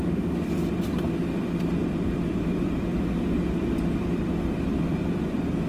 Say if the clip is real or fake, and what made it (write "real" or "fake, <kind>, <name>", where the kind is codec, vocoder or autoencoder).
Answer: fake, vocoder, BigVGAN v2